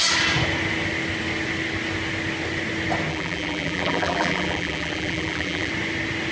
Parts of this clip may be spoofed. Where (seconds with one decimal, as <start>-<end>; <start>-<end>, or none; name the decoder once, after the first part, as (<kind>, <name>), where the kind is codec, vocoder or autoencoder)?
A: 3.1-5.7 (vocoder, BigVGAN v2)